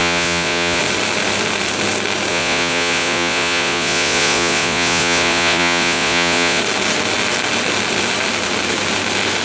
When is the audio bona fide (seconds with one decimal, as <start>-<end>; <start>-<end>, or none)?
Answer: 0.8-2.3; 6.6-9.4